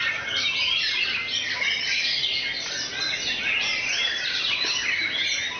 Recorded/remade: recorded